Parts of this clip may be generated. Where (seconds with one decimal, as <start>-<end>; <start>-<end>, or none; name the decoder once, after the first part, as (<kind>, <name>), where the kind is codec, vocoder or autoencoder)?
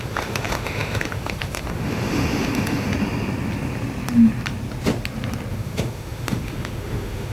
0.0-2.9 (autoencoder, DAC-VAE); 5.5-7.3